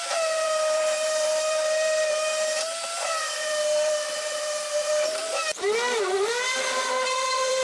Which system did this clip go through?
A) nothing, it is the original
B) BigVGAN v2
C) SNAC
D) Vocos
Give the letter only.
B